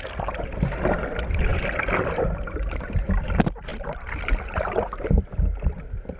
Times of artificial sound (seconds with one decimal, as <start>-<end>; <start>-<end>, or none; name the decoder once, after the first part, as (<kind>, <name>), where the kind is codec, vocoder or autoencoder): 1.5-3.2 (vocoder, BigVGAN v2)

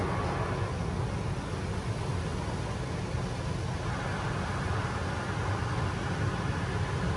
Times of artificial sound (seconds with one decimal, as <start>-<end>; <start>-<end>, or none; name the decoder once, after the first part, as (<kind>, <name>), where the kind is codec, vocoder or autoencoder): none

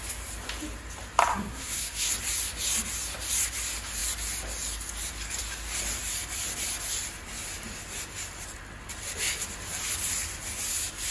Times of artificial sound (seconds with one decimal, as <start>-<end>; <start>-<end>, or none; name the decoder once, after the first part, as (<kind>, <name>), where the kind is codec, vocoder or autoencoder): 1.3-2.1 (codec, SNAC)

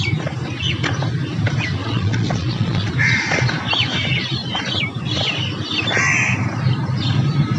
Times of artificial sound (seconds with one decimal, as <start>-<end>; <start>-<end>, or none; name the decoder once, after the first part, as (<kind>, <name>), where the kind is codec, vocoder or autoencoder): 1.8-2.9 (vocoder, Vocos)

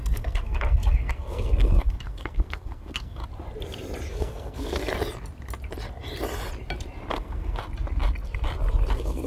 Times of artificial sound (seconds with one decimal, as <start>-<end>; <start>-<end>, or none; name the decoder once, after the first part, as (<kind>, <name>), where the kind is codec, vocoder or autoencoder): 0.0-3.2 (codec, SNAC); 4.1-4.8; 7.1-7.6; 8.9-9.3

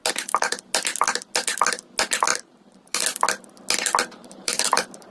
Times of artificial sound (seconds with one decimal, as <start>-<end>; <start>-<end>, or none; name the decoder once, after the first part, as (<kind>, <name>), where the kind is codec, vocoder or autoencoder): 2.3-3.0 (vocoder, BigVGAN v2); 4.2-5.1